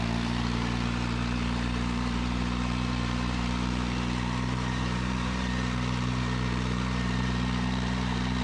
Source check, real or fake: fake